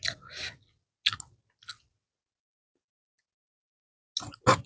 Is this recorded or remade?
recorded